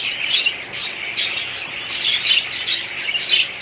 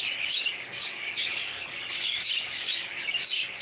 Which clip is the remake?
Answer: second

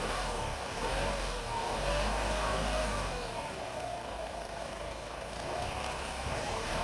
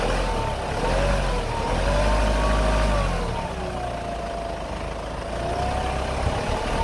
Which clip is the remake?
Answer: first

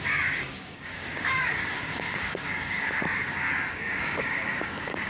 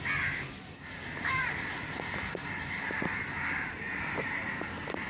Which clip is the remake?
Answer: first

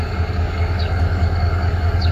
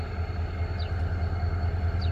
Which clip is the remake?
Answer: first